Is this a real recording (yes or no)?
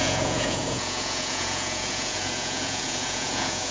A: no